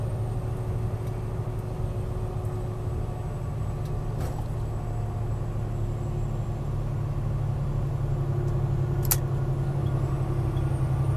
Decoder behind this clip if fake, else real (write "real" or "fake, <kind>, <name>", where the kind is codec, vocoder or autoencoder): real